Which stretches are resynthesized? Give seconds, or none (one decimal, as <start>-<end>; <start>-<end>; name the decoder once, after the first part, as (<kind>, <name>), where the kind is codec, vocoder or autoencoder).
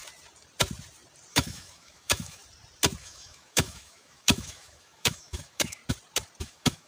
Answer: 1.3-2.4 (autoencoder, DAC-VAE); 3.0-5.8; 6.4-6.9